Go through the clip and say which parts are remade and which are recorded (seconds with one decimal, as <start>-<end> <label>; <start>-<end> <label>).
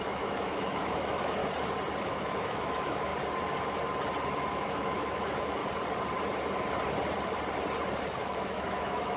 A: 0.0-1.4 remade; 1.4-2.0 recorded; 2.0-3.1 remade; 3.1-4.5 recorded; 4.5-5.6 remade; 5.6-8.2 recorded; 8.2-9.2 remade